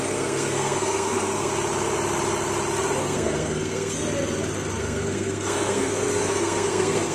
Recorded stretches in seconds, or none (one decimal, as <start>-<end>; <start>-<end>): 1.5-3.0; 4.0-4.8